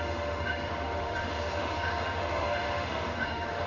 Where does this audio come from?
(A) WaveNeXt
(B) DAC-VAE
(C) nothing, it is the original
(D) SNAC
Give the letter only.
B